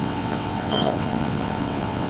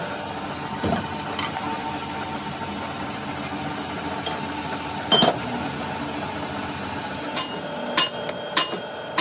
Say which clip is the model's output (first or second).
first